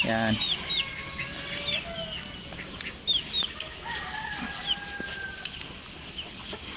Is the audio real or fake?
real